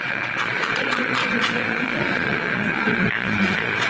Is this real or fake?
fake